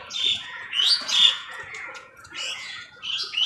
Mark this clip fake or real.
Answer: fake